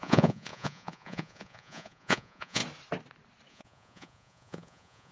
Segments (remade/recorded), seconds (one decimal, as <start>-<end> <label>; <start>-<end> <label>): 0.0-2.6 remade; 2.6-3.5 recorded; 3.5-5.1 remade